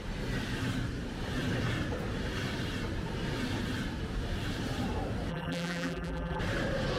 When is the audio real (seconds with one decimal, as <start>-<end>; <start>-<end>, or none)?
0.0-5.3; 6.4-7.0